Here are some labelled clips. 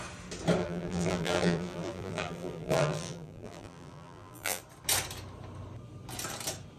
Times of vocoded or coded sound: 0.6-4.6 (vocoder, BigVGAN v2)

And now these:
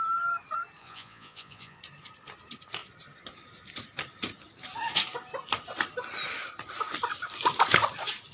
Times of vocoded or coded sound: 0.8-1.8 (vocoder, Vocos)

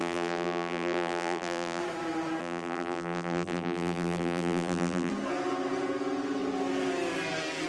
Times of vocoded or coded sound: 0.0-1.8 (vocoder, BigVGAN v2); 2.4-5.1

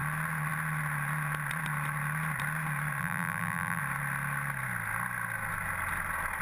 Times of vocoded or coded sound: 3.0-3.8 (vocoder, BigVGAN v2)

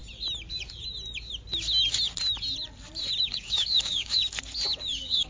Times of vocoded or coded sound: 3.2-4.2 (codec, DAC); 4.8-5.3

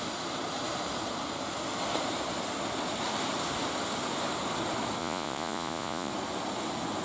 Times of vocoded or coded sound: 5.0-6.1 (vocoder, Vocos)

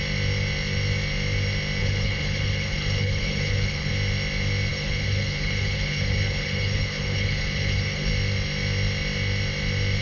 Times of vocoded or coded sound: 1.8-3.9 (codec, HILCodec); 4.7-8.1